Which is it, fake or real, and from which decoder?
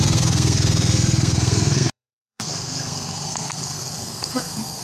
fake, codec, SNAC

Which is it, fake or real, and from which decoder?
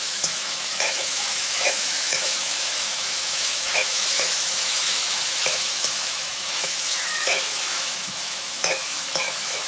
fake, autoencoder, DAC-VAE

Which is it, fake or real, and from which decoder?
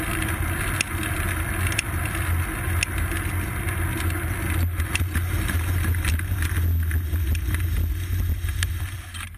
real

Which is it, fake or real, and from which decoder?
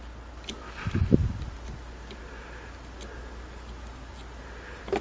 real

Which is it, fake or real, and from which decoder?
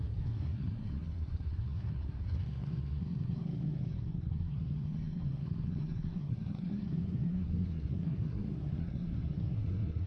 fake, codec, SNAC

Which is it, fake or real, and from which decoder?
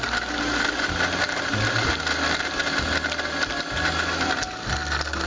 real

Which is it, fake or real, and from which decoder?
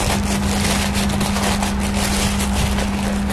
real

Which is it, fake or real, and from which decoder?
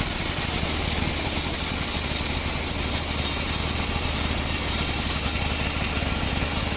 real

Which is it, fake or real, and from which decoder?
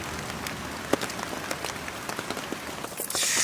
real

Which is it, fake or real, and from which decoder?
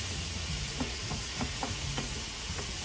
fake, vocoder, Vocos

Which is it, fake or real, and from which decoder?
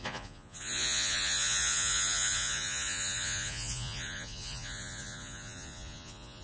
fake, vocoder, Vocos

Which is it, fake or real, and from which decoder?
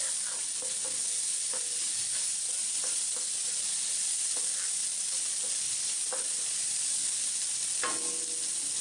real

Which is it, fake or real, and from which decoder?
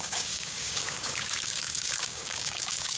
fake, codec, DAC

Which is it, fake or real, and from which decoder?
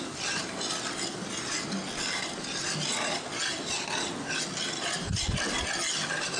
real